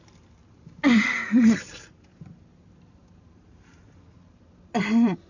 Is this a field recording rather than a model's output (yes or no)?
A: yes